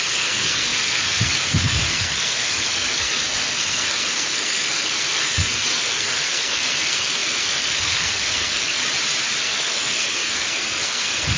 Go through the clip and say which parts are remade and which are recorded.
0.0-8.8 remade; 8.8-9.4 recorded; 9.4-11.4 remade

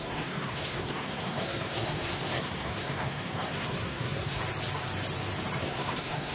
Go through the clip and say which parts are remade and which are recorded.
0.0-4.4 remade; 4.4-5.6 recorded; 5.6-6.3 remade

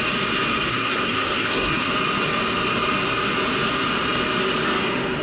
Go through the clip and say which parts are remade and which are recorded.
0.0-0.7 recorded; 0.7-1.9 remade; 1.9-5.2 recorded

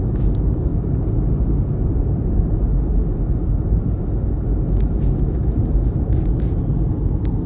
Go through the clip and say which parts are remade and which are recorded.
0.0-7.5 recorded

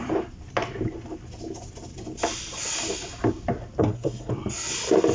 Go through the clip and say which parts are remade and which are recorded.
0.0-3.8 recorded; 3.8-4.3 remade; 4.3-5.1 recorded

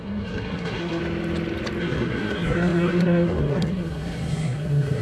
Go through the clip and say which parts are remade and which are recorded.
0.0-1.0 remade; 1.0-1.8 recorded; 1.8-5.0 remade

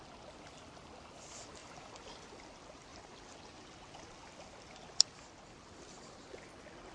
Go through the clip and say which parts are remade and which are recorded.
0.0-6.9 recorded